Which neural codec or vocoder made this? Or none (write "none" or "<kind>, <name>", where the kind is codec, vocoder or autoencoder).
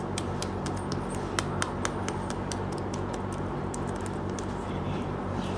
none